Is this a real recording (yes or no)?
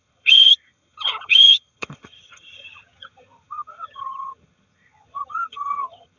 no